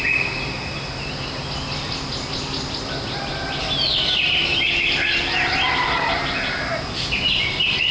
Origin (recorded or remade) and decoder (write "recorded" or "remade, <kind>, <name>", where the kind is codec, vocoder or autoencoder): recorded